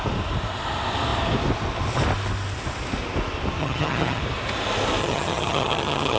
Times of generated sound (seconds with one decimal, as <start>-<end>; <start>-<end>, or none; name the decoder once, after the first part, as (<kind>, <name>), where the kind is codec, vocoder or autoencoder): 3.6-4.2 (vocoder, HiFi-GAN); 5.0-6.2